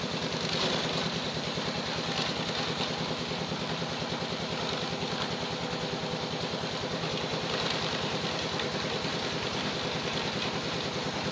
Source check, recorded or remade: recorded